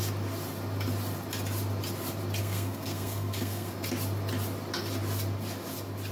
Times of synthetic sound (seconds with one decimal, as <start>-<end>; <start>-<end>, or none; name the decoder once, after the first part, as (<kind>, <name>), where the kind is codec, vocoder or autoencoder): 2.4-3.7 (codec, SNAC)